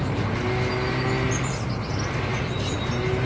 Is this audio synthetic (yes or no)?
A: no